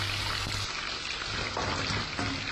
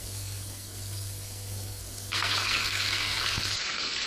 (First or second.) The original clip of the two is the first